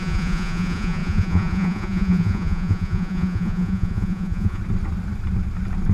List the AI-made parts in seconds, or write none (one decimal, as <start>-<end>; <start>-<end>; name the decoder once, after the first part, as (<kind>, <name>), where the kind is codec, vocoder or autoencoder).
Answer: 0.0-4.6 (vocoder, Vocos)